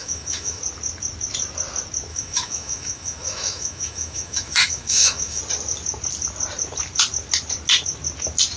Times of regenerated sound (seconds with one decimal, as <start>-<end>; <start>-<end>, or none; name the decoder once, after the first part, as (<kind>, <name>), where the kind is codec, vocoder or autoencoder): 0.0-0.6 (autoencoder, DAC-VAE); 2.1-5.4